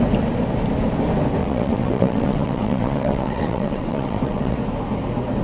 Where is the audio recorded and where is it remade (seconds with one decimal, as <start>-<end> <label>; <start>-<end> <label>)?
0.0-1.4 recorded; 1.4-4.6 remade; 4.6-5.4 recorded